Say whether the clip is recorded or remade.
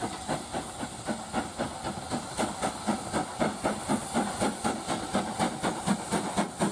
recorded